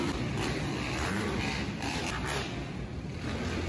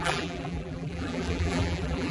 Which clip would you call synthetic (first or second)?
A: second